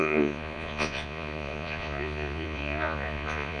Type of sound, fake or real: fake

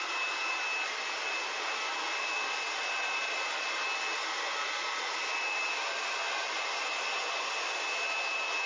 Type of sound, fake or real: real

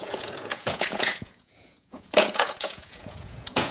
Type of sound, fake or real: fake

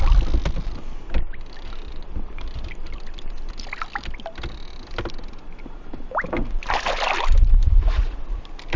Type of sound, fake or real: real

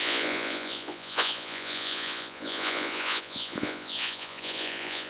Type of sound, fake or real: fake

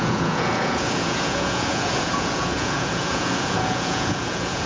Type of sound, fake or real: fake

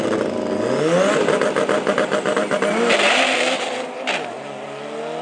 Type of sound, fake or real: real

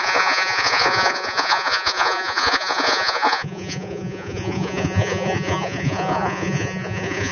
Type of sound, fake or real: fake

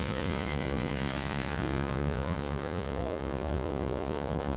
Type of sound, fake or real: fake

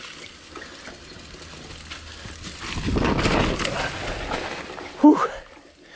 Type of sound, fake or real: real